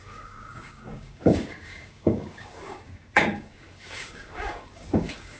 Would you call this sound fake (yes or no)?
yes